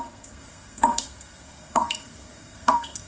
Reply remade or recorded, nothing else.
remade